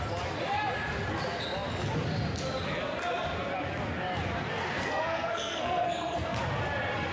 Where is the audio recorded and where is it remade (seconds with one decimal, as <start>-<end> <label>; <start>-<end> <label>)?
0.0-4.4 recorded; 4.4-6.4 remade; 6.4-7.1 recorded